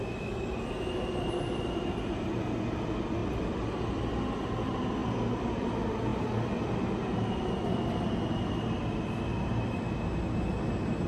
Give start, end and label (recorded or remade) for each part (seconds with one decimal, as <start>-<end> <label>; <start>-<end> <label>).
0.0-3.2 recorded; 3.2-3.9 remade; 3.9-5.0 recorded; 5.0-5.6 remade; 5.6-11.1 recorded

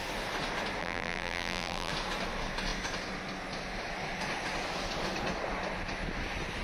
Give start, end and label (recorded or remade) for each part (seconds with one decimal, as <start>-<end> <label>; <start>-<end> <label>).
0.0-0.8 recorded; 0.8-1.9 remade; 1.9-6.6 recorded